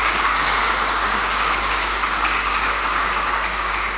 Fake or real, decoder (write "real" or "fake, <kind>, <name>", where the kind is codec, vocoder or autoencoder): fake, codec, DAC